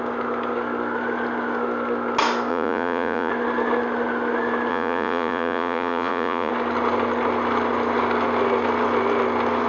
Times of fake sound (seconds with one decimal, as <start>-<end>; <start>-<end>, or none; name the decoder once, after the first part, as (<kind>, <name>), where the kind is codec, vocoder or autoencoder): 2.5-3.3 (vocoder, Vocos); 4.7-6.5